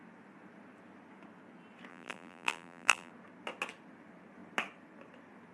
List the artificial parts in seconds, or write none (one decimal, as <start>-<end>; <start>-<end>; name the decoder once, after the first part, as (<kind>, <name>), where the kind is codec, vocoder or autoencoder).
1.9-3.1 (vocoder, BigVGAN v2)